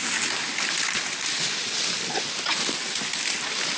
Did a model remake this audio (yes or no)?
no